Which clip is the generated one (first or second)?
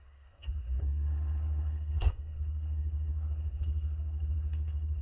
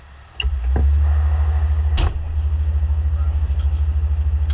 first